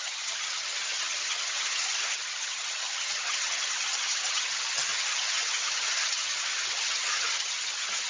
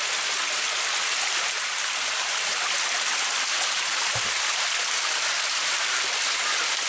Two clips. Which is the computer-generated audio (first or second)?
first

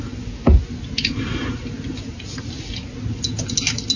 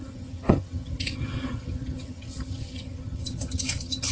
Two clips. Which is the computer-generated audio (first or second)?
second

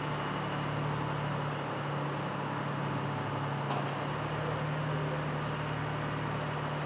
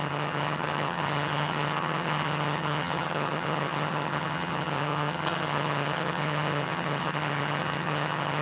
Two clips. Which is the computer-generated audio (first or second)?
second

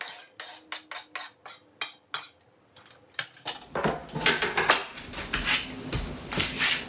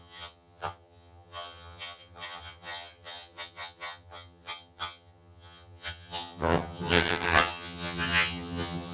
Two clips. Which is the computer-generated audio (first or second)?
second